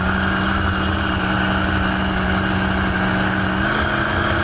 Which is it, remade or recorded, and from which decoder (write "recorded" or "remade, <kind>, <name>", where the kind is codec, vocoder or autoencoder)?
recorded